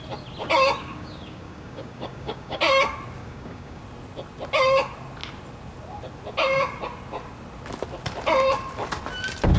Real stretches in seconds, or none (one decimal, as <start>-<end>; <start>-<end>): 0.0-0.8; 2.6-3.2; 3.8-9.6